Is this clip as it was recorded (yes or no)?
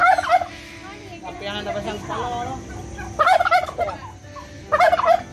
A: yes